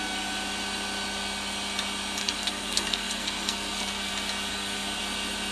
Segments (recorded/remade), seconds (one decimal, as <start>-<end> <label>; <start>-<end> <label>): 0.0-2.2 recorded; 2.2-4.1 remade; 4.1-4.5 recorded; 4.5-5.0 remade; 5.0-5.5 recorded